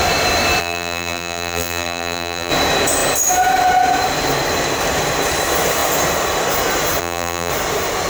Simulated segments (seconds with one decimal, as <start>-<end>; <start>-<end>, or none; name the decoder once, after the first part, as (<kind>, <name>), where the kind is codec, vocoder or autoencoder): 0.6-2.5 (vocoder, BigVGAN v2); 7.0-7.5